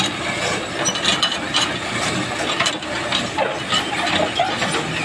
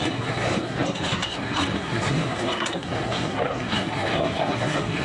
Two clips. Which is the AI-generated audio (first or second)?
second